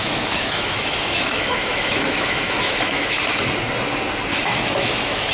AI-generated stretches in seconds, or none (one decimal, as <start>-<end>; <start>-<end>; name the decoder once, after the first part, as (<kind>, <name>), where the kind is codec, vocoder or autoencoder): 0.0-3.2 (autoencoder, DAC-VAE); 4.3-5.3